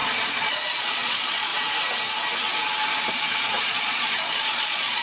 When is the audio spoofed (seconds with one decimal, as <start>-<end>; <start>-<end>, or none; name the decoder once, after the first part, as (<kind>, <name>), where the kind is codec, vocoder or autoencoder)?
0.0-1.5 (vocoder, Vocos); 3.1-5.0